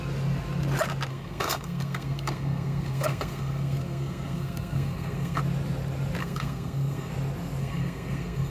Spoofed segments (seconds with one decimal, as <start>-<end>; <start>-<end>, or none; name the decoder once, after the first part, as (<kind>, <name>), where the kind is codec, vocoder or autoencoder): 1.1-5.4 (codec, SNAC); 6.2-7.1; 7.6-8.5